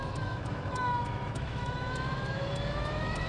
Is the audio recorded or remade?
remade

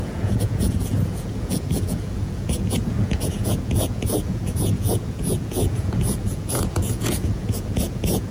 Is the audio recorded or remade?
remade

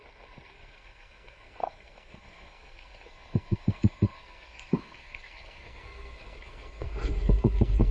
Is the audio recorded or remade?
remade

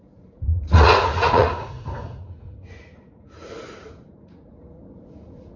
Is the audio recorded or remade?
remade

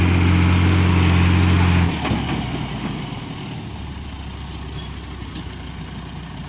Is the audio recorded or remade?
recorded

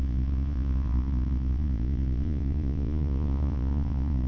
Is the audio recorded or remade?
remade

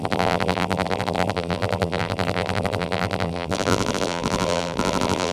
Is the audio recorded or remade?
remade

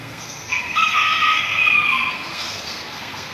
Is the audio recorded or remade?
remade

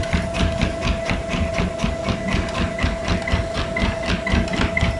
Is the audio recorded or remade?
recorded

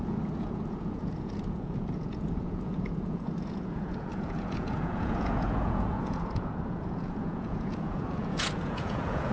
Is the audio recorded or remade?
remade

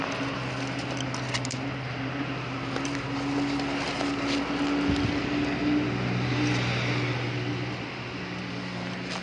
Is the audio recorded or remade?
recorded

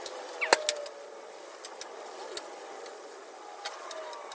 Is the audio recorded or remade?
recorded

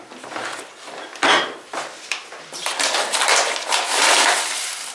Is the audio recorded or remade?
remade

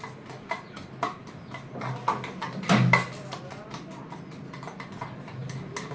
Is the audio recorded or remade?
recorded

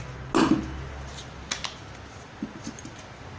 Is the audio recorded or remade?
recorded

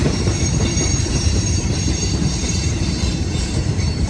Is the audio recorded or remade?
remade